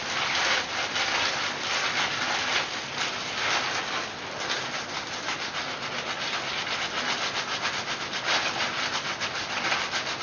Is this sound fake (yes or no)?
no